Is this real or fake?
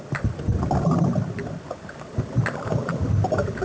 real